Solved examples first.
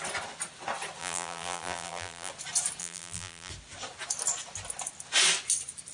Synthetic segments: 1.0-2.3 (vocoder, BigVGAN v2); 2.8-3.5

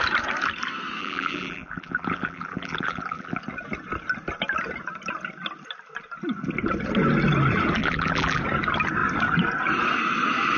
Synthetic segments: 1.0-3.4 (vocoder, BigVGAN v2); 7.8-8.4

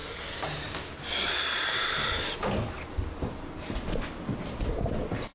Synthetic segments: none